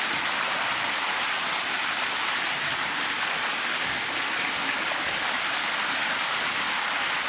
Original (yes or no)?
yes